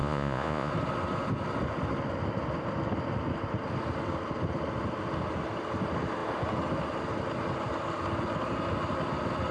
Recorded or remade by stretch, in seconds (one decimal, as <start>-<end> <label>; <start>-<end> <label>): 0.0-0.7 remade; 0.7-9.5 recorded